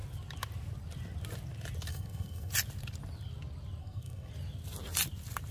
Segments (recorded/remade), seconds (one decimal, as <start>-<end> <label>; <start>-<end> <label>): 0.0-1.9 recorded; 1.9-2.5 remade; 2.5-3.8 recorded; 3.8-4.3 remade; 4.3-5.5 recorded